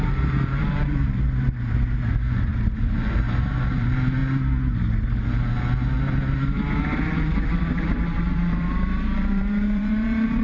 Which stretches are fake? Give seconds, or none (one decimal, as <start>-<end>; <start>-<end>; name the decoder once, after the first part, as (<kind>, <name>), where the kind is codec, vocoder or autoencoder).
0.0-4.2 (vocoder, BigVGAN v2); 7.8-10.4